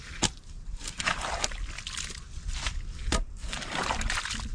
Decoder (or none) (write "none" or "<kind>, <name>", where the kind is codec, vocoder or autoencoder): none